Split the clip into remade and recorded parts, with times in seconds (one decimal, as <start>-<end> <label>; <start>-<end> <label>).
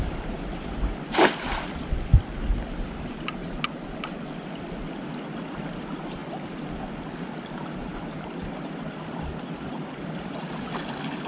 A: 0.0-7.8 recorded; 7.8-8.5 remade; 8.5-11.3 recorded